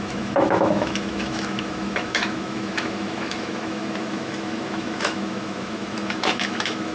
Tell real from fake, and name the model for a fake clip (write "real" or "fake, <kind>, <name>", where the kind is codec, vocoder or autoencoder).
fake, autoencoder, DAC-VAE